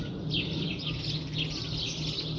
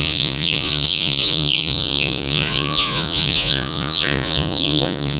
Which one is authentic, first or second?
first